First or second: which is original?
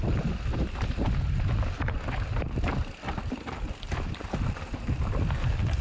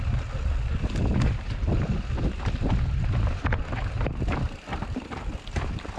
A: second